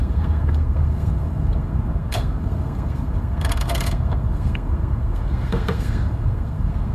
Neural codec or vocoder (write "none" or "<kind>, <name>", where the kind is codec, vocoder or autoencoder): codec, SNAC